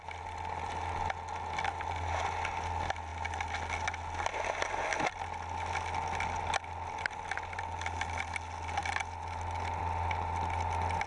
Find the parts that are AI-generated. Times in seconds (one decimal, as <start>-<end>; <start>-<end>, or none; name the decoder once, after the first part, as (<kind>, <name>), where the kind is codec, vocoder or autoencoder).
none